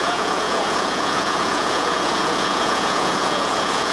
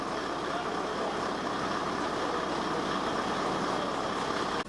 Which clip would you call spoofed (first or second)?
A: first